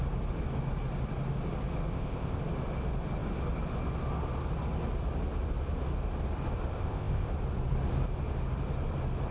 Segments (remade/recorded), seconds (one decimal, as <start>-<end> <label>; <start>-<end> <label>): 0.0-1.9 recorded; 1.9-2.4 remade; 2.4-6.7 recorded; 6.7-7.3 remade; 7.3-9.3 recorded